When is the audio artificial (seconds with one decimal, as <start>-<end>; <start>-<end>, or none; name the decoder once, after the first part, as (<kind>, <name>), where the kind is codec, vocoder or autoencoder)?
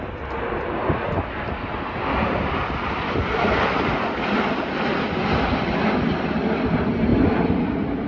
0.0-7.1 (vocoder, BigVGAN v2)